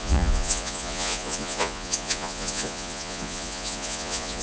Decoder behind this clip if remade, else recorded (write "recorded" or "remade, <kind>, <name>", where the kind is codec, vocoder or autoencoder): remade, vocoder, Vocos